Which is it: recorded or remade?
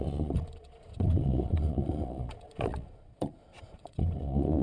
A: remade